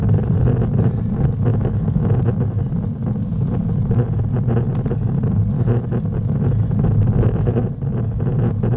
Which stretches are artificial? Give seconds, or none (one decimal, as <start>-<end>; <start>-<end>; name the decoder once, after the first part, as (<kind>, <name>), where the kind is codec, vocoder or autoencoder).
1.5-2.2 (autoencoder, DAC-VAE)